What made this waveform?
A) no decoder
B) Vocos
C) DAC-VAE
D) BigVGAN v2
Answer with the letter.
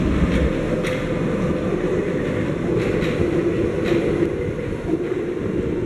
A